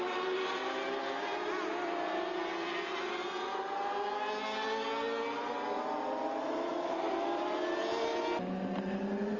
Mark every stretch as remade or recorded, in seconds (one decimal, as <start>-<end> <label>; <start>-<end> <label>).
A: 0.0-9.4 recorded